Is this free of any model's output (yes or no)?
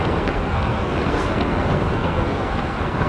no